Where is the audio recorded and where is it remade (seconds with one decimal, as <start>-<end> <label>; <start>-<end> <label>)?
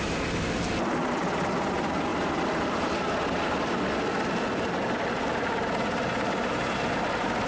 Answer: 0.0-2.1 recorded; 2.1-3.0 remade; 3.0-7.5 recorded